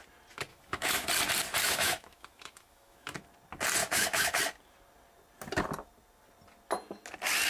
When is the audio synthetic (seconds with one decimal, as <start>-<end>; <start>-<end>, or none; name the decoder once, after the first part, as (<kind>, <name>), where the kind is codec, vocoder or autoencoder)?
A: 0.5-1.1 (autoencoder, DAC-VAE); 1.6-3.2; 3.8-4.4